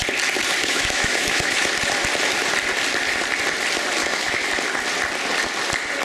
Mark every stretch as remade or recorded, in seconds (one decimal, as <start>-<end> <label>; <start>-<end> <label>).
0.0-0.6 recorded; 0.6-1.7 remade; 1.7-4.0 recorded; 4.0-4.5 remade; 4.5-6.0 recorded